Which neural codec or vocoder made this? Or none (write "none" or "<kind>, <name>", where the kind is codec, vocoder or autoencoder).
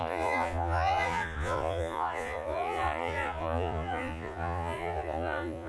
vocoder, Vocos